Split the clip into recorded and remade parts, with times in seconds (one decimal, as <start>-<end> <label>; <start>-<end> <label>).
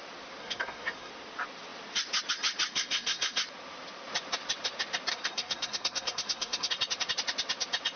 0.0-0.4 recorded; 0.4-1.1 remade; 1.1-2.7 recorded; 2.7-3.4 remade; 3.4-5.1 recorded; 5.1-6.7 remade; 6.7-8.0 recorded